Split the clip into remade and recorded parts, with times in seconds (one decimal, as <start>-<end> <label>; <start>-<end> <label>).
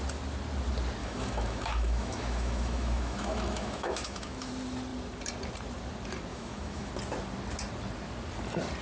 0.0-1.0 recorded; 1.0-4.5 remade; 4.5-6.3 recorded; 6.3-6.9 remade; 6.9-8.8 recorded